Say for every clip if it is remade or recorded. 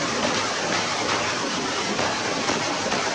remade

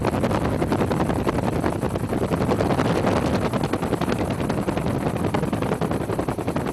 recorded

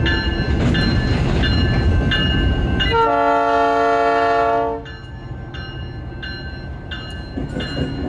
recorded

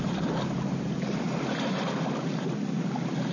recorded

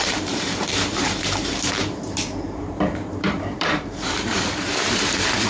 remade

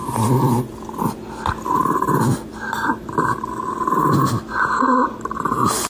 recorded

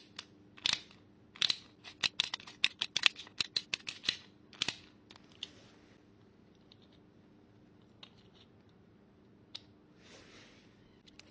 recorded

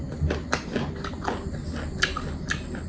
recorded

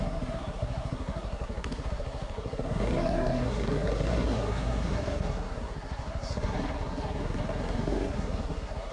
remade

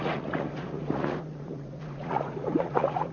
remade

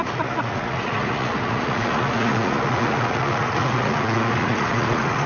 remade